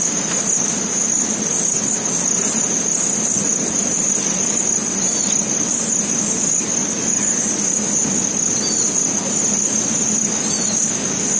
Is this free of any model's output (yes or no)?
yes